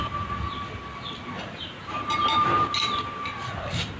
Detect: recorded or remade recorded